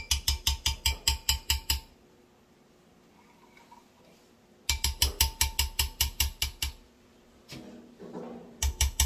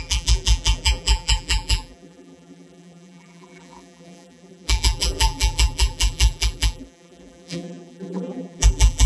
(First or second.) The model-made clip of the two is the second